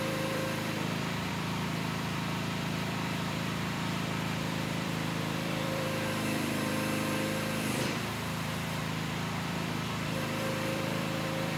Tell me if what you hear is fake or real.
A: fake